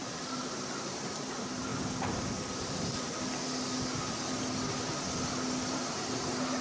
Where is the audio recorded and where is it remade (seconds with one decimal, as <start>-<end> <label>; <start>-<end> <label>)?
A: 0.0-1.7 remade; 1.7-5.7 recorded; 5.7-6.6 remade